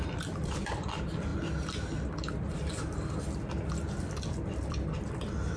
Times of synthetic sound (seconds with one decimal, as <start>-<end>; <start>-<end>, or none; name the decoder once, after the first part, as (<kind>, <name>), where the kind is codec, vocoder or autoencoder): 0.0-1.3 (vocoder, BigVGAN v2); 4.7-5.6